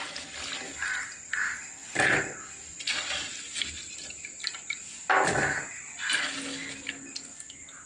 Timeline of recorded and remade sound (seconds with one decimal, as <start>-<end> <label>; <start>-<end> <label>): 0.0-7.9 recorded